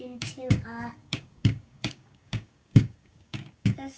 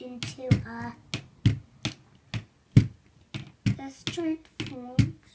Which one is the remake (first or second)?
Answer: first